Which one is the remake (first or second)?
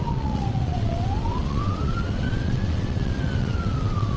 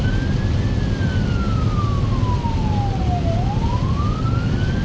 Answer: first